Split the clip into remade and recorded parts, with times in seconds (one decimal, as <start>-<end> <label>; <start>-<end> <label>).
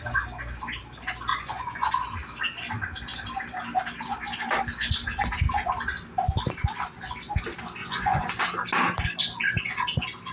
0.0-1.3 recorded; 1.3-1.9 remade; 1.9-7.8 recorded; 7.8-8.4 remade; 8.4-10.3 recorded